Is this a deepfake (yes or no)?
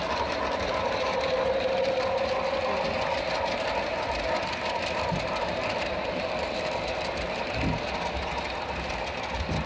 no